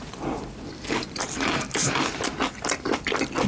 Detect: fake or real fake